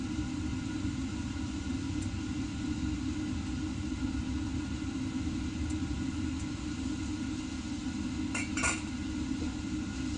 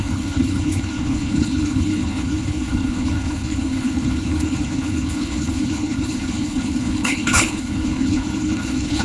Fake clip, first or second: second